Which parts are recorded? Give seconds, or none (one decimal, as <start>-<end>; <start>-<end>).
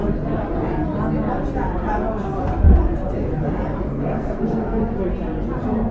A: 0.0-3.9; 4.8-5.9